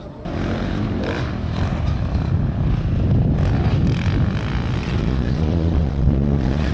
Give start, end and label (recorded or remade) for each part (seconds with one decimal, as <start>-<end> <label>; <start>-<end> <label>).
0.0-4.8 recorded; 4.8-6.7 remade